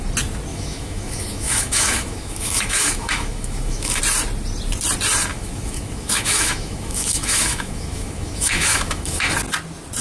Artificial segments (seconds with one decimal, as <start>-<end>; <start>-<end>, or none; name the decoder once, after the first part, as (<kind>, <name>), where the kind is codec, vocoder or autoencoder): 0.5-4.0 (autoencoder, DAC-VAE); 5.3-9.3